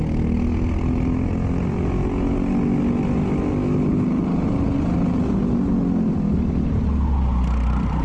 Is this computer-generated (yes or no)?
no